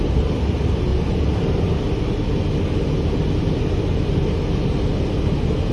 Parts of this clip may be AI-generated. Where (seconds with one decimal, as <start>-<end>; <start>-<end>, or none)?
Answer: none